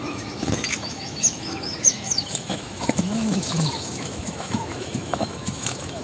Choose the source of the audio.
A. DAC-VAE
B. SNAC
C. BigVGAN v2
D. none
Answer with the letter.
A